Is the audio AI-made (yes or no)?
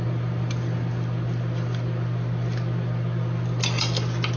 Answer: no